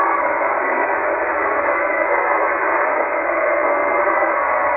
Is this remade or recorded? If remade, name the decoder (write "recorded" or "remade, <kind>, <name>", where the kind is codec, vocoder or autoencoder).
remade, codec, SNAC